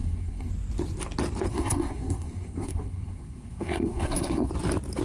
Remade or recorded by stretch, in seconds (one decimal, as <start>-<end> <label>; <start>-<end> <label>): 0.0-0.5 remade; 0.5-1.5 recorded; 1.5-4.5 remade; 4.5-5.0 recorded